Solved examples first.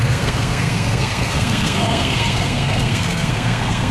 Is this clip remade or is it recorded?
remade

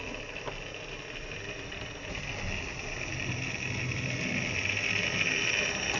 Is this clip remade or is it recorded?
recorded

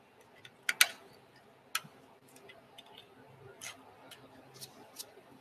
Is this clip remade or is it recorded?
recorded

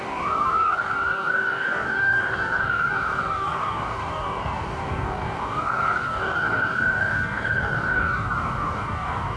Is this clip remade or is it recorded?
remade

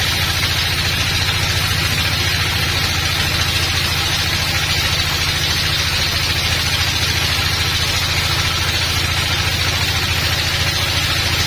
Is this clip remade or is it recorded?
recorded